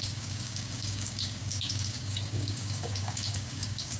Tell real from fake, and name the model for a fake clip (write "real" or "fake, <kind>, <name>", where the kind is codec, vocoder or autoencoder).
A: fake, codec, DAC